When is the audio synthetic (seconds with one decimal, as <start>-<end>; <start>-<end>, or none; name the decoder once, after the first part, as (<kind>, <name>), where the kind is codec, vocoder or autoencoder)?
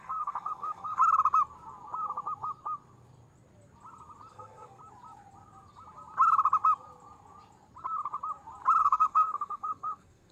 0.0-1.0 (codec, SNAC); 4.3-4.8; 8.8-10.3